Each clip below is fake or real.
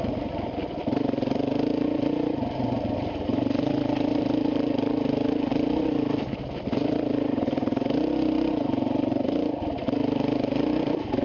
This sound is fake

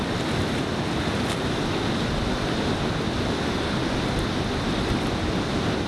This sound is real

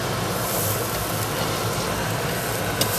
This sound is real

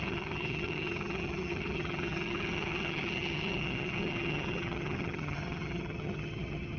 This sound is fake